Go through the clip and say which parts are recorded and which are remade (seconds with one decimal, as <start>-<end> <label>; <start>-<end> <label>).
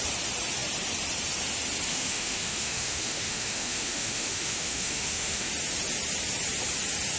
0.0-1.9 recorded; 1.9-5.5 remade; 5.5-7.2 recorded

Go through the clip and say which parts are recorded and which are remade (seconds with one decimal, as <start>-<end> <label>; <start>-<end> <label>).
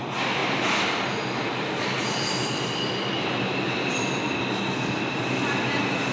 0.0-6.1 recorded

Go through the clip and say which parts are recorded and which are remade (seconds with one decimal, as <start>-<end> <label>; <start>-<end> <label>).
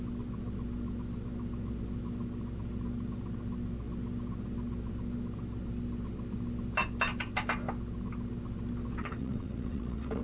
0.0-9.0 recorded; 9.0-10.2 remade